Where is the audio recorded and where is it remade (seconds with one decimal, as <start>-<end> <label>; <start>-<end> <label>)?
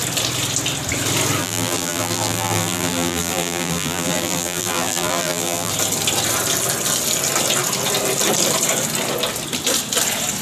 0.0-1.4 recorded; 1.4-5.7 remade; 5.7-10.4 recorded